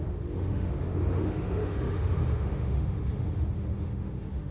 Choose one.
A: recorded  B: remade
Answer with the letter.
B